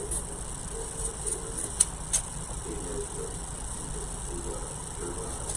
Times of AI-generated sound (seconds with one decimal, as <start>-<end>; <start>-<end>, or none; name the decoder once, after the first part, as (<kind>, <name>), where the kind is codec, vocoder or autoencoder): none